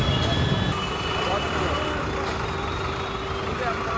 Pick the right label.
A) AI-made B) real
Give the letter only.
B